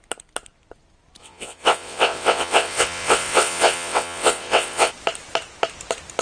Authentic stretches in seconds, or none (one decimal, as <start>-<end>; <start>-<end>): 0.0-1.2; 4.9-6.2